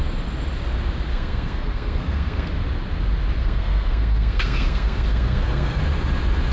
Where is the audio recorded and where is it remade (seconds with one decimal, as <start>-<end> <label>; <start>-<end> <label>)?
0.0-1.1 recorded; 1.1-2.5 remade; 2.5-3.4 recorded; 3.4-5.8 remade; 5.8-6.5 recorded